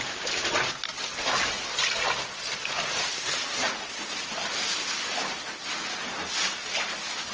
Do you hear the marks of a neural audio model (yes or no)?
no